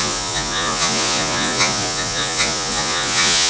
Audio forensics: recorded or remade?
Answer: remade